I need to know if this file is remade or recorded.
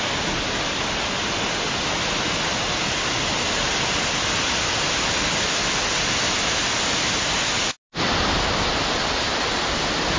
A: recorded